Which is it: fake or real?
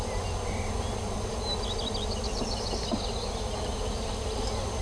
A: real